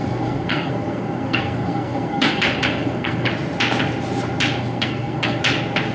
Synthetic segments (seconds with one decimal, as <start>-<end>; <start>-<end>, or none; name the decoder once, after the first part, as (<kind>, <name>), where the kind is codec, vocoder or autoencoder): 0.0-3.3 (codec, SNAC); 4.6-5.4

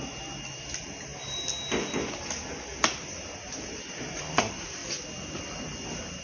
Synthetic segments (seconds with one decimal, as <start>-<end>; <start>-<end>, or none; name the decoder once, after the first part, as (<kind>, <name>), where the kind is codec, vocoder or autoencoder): 0.0-1.1 (vocoder, BigVGAN v2); 3.4-4.8; 5.4-6.2